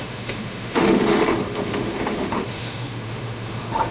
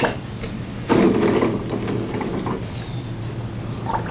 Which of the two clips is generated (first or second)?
first